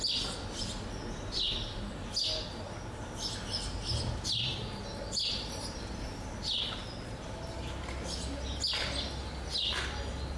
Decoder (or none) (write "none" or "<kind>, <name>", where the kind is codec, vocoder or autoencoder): none